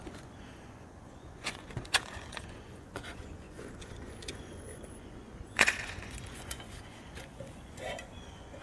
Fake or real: fake